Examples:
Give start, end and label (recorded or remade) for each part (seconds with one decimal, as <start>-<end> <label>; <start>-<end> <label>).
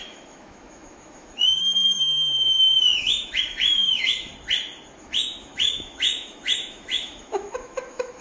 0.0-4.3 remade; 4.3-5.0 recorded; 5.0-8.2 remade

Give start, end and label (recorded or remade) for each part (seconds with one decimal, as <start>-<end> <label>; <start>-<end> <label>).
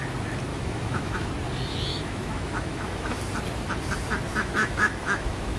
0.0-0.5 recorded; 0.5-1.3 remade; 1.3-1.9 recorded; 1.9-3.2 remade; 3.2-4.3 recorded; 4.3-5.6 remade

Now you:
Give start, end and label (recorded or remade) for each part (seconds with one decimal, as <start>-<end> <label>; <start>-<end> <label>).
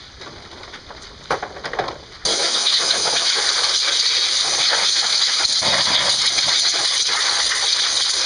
0.0-2.3 recorded; 2.3-3.4 remade; 3.4-4.8 recorded; 4.8-5.4 remade; 5.4-8.3 recorded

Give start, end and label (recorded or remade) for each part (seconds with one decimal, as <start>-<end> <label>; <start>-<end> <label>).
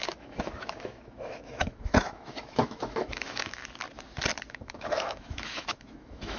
0.0-3.6 remade; 3.6-4.5 recorded; 4.5-6.4 remade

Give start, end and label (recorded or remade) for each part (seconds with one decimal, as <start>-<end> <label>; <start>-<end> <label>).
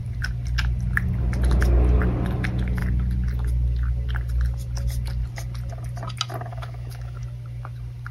0.0-6.5 recorded; 6.5-7.2 remade; 7.2-8.1 recorded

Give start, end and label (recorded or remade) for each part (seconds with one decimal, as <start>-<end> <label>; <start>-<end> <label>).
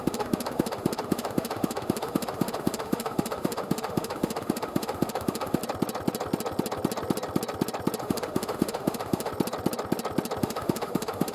0.0-5.6 remade; 5.6-8.0 recorded; 8.0-9.3 remade; 9.3-10.4 recorded; 10.4-11.3 remade